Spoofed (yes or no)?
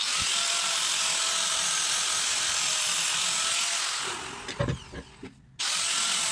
no